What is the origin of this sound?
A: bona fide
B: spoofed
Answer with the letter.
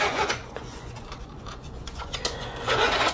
B